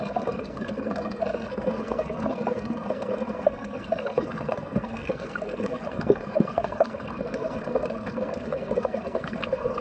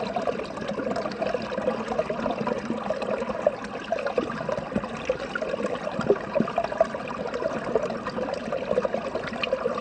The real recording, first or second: second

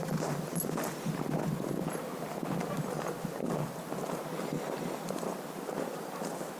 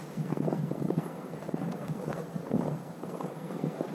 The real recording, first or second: first